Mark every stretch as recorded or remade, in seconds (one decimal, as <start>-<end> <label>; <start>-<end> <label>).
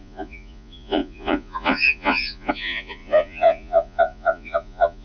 0.0-5.0 remade